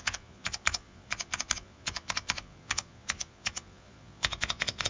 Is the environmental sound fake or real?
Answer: fake